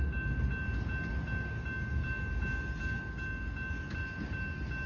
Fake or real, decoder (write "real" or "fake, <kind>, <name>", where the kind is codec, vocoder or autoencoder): real